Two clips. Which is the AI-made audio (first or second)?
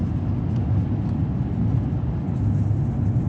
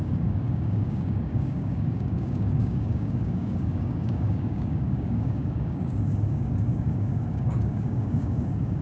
second